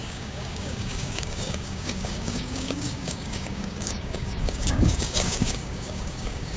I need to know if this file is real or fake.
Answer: fake